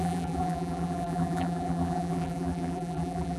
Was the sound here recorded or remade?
remade